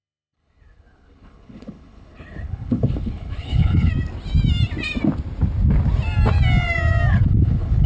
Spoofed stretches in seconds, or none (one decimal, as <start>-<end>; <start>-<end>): 0.0-3.9; 7.1-7.9